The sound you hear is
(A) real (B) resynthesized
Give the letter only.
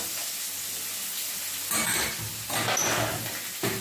A